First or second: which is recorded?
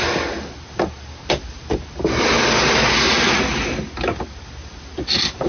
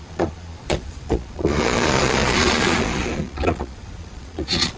first